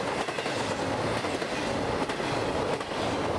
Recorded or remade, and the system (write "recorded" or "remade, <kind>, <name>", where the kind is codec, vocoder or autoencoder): recorded